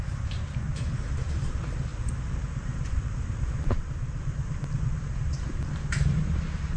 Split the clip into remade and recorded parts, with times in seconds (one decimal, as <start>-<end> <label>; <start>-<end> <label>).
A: 0.0-6.8 remade